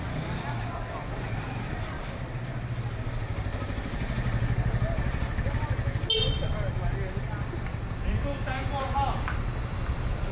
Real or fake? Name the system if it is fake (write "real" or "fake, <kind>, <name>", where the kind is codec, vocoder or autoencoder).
real